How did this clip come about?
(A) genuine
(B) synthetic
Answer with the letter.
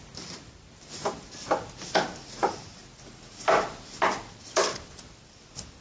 A